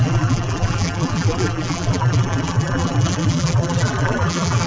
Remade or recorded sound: remade